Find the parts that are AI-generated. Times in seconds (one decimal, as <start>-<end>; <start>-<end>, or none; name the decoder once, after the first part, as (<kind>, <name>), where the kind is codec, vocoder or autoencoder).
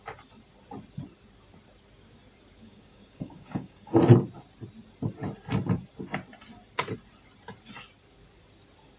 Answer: 2.6-4.0 (codec, DAC)